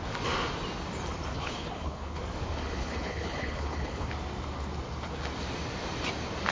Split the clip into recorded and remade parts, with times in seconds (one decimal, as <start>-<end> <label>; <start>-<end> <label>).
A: 0.0-1.3 recorded; 1.3-2.2 remade; 2.2-2.8 recorded; 2.8-4.1 remade; 4.1-6.5 recorded